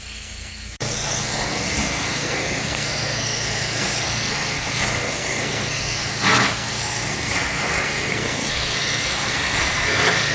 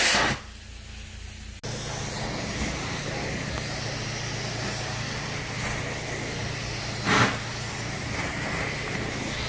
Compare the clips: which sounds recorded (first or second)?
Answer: second